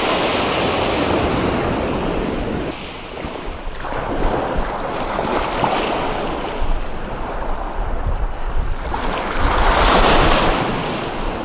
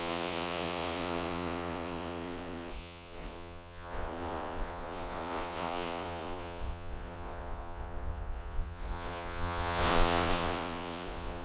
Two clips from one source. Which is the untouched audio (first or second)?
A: first